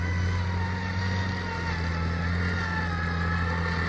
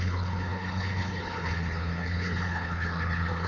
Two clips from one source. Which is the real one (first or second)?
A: first